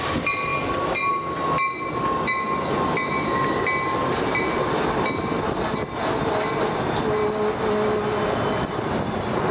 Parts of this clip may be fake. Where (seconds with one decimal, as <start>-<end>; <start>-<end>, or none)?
none